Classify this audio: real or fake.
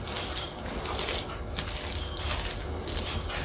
real